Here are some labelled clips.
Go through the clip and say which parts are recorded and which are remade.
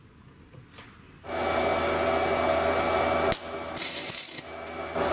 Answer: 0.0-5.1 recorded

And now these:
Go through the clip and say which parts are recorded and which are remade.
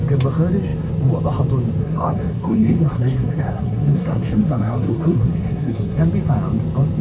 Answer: 0.0-1.8 recorded; 1.8-6.0 remade; 6.0-7.0 recorded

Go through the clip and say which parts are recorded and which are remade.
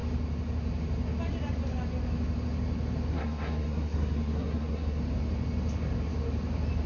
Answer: 0.0-3.1 recorded; 3.1-5.0 remade; 5.0-6.9 recorded